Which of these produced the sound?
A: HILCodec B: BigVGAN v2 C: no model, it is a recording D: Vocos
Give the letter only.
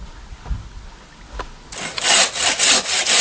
C